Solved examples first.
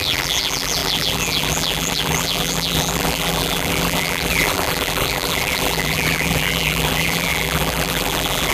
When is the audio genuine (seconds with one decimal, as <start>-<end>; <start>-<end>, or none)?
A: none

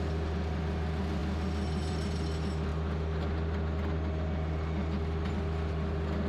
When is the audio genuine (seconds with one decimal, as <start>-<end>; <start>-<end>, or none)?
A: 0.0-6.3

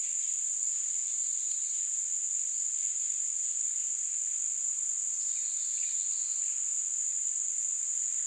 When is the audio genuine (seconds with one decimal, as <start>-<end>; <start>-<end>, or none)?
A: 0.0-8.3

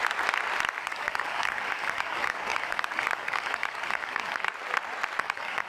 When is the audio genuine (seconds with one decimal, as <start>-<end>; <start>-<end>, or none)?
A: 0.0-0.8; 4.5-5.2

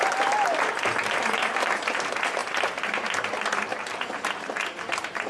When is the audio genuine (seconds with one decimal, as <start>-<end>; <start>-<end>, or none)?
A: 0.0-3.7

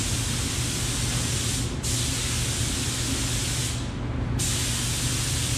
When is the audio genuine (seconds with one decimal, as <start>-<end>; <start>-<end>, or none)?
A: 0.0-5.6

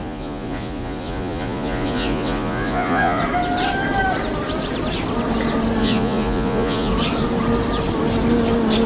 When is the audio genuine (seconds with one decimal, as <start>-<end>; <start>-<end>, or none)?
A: 3.2-5.8; 6.9-8.9

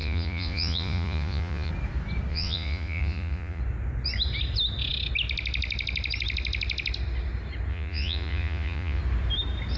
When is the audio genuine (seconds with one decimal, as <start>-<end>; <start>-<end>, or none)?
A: 1.7-2.3; 3.6-7.7; 9.0-9.8